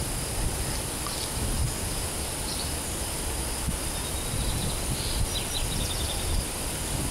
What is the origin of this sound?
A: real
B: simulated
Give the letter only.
A